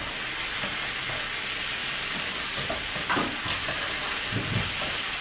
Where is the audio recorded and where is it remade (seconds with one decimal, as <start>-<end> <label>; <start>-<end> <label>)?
0.0-1.8 recorded; 1.8-5.2 remade